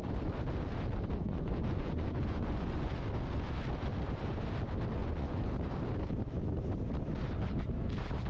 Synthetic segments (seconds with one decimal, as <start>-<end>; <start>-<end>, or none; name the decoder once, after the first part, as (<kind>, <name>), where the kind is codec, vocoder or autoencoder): 1.2-2.9 (vocoder, Vocos); 5.0-5.5